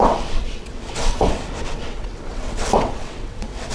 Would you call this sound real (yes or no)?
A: no